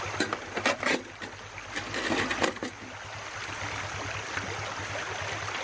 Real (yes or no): yes